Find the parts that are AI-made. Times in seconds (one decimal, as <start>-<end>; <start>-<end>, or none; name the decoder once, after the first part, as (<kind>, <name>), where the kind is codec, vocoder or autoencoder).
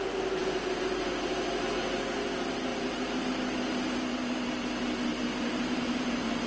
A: 2.7-3.2 (vocoder, BigVGAN v2); 5.1-6.5